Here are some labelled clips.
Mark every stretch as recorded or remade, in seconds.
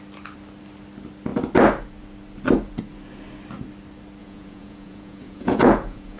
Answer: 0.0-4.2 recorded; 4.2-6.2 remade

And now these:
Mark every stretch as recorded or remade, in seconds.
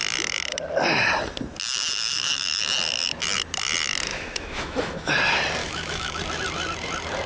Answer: 0.0-2.1 recorded; 2.1-2.6 remade; 2.6-4.1 recorded; 4.1-5.1 remade; 5.1-5.6 recorded; 5.6-6.2 remade; 6.2-7.3 recorded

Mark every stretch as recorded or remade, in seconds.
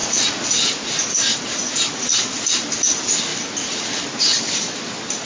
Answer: 0.0-0.5 remade; 0.5-1.3 recorded; 1.3-1.9 remade; 1.9-3.3 recorded; 3.3-5.3 remade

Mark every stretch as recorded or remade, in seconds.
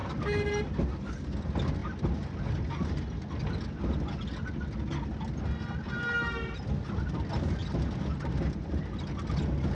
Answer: 0.0-9.7 recorded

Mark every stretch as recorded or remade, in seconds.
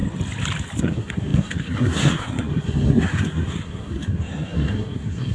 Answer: 0.0-0.8 recorded; 0.8-5.3 remade